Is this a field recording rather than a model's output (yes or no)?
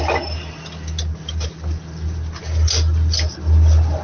yes